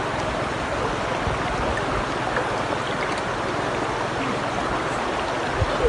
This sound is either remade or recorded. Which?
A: recorded